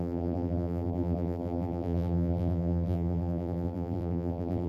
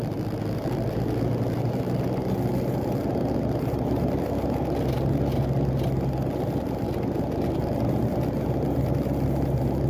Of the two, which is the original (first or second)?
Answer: second